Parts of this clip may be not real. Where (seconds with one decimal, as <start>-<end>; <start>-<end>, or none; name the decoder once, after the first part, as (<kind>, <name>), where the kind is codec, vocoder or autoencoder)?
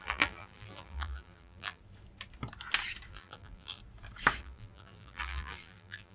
0.0-1.8 (vocoder, BigVGAN v2); 3.1-3.8; 4.4-6.1